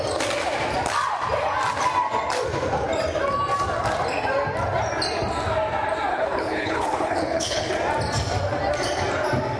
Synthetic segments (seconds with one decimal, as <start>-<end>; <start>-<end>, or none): 6.1-7.7